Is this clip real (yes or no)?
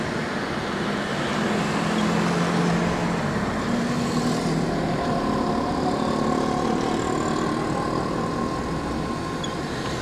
yes